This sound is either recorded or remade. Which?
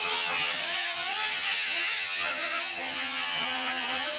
remade